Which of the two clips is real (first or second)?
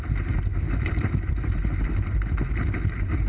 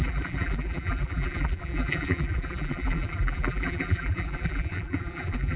first